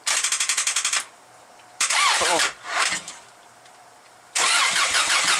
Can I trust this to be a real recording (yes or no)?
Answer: no